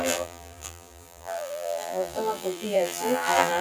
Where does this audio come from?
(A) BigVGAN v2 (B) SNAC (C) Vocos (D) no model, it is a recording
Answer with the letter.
A